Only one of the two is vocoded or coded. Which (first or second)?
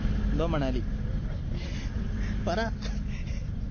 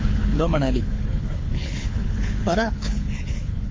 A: second